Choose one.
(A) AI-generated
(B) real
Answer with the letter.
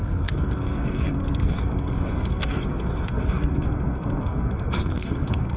A